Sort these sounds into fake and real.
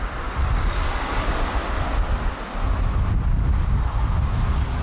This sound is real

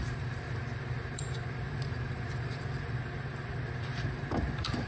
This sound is fake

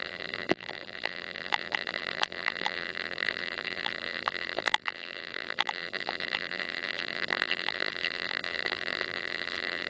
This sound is fake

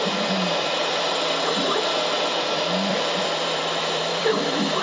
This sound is fake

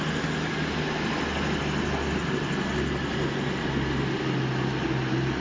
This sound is real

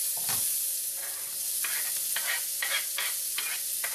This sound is real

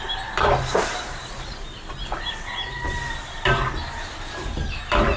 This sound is real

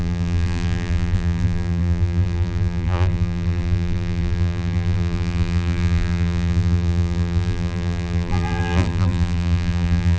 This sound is fake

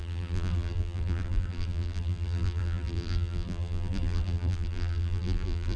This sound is fake